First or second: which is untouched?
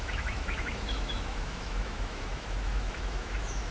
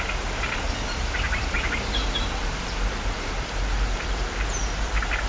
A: second